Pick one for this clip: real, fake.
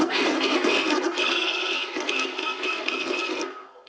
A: fake